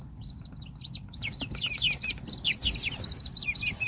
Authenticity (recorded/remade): recorded